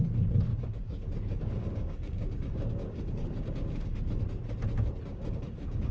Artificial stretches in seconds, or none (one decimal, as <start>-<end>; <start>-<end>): 0.5-4.0; 5.1-5.9